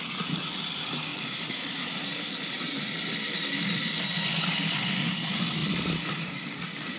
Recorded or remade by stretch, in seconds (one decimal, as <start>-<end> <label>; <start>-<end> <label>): 0.0-7.0 recorded